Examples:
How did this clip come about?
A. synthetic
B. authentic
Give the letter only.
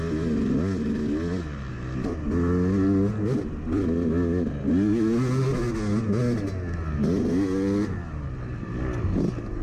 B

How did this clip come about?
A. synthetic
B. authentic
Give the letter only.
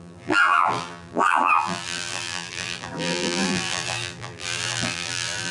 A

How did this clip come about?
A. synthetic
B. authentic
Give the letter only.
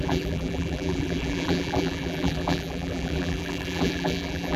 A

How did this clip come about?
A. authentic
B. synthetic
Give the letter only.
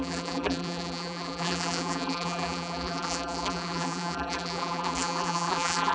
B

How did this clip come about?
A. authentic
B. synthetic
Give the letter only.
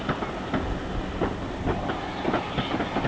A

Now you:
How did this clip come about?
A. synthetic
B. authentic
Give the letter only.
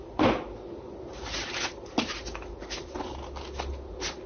B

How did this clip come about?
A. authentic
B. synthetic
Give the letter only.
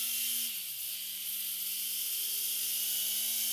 A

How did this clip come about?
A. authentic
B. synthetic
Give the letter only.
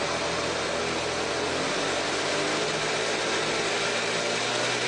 A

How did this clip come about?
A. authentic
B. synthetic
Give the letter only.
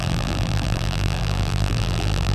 B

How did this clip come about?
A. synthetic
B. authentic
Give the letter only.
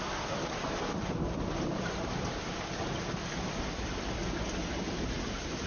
B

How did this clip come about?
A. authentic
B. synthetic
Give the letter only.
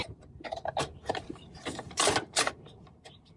B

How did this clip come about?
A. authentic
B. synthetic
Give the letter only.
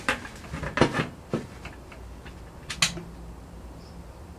A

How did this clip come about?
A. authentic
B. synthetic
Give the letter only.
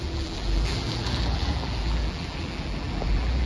B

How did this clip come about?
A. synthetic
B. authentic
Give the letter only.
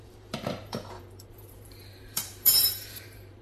A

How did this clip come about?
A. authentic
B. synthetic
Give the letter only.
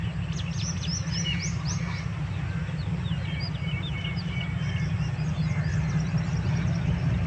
B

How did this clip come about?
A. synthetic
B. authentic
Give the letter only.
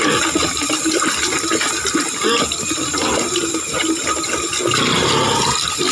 B